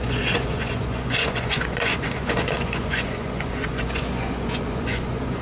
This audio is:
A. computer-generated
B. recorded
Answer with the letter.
A